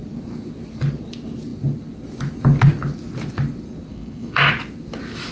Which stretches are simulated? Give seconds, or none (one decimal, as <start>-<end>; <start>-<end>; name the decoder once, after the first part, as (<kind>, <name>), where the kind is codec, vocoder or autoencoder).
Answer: 3.9-4.5 (codec, DAC)